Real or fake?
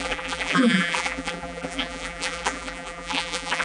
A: fake